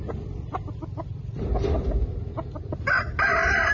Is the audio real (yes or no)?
yes